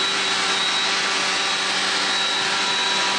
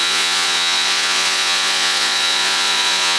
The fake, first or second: second